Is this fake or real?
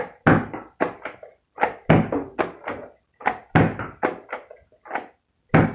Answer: real